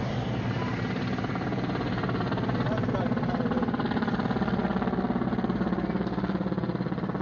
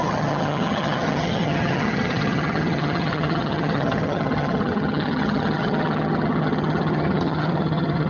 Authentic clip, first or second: first